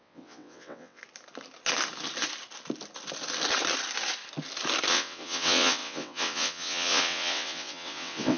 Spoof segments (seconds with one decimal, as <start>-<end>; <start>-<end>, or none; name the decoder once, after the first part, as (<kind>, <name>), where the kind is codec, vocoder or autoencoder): 0.0-1.0 (vocoder, WaveNeXt); 4.9-8.4

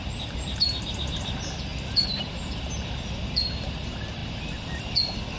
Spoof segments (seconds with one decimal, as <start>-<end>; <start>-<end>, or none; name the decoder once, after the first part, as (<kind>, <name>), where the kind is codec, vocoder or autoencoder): 0.0-0.9 (vocoder, BigVGAN v2)

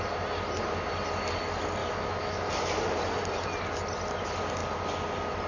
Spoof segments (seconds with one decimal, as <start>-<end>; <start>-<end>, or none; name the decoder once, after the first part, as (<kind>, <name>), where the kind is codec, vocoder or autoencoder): 1.8-2.5 (autoencoder, DAC-VAE)

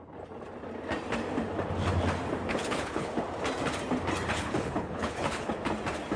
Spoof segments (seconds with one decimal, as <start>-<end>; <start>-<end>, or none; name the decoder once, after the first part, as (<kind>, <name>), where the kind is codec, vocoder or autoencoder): 2.5-3.1 (codec, HILCodec); 4.3-5.5

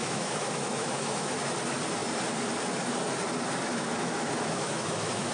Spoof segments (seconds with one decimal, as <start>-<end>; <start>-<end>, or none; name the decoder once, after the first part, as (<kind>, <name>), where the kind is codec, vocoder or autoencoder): 0.0-1.3 (autoencoder, DAC-VAE); 3.7-5.3

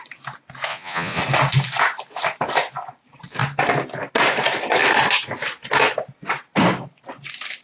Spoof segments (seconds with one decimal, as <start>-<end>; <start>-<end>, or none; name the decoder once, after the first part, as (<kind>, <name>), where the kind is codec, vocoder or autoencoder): 0.7-1.2 (vocoder, Vocos)

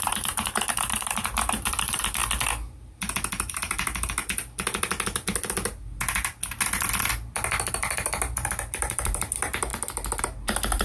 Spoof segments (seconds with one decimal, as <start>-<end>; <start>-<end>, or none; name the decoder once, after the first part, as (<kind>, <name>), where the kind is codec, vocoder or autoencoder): 0.0-2.2 (vocoder, BigVGAN v2); 3.5-4.2; 7.7-9.7; 10.2-10.8

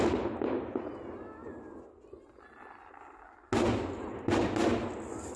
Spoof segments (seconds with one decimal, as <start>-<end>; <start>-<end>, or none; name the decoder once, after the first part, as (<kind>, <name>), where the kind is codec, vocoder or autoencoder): none